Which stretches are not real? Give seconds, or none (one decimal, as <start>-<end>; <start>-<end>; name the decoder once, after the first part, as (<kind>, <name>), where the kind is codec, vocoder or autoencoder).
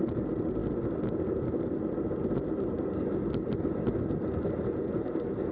none